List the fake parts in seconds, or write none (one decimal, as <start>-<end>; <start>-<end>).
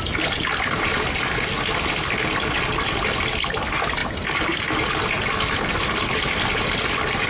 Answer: none